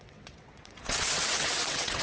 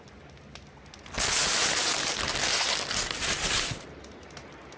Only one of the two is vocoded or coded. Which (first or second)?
first